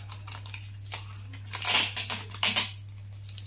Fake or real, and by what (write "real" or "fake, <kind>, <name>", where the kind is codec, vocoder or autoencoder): real